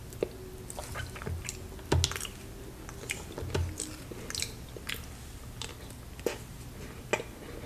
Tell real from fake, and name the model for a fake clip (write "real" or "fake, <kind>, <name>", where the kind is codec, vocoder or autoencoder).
real